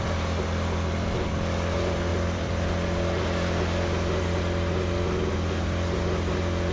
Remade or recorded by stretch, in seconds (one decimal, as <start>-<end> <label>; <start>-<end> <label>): 0.0-2.1 recorded; 2.1-2.7 remade; 2.7-6.7 recorded